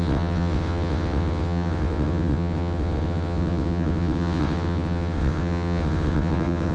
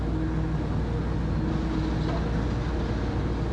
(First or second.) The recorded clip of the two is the second